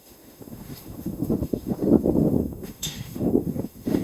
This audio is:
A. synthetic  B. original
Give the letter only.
A